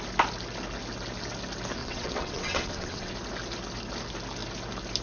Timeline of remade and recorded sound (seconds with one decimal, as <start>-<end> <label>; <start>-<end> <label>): 0.0-1.8 recorded; 1.8-3.1 remade; 3.1-5.0 recorded